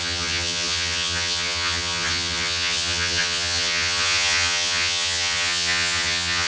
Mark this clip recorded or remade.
remade